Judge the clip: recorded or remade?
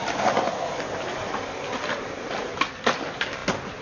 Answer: recorded